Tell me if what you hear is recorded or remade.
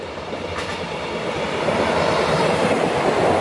recorded